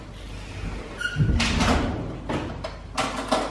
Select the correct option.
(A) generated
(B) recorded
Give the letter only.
B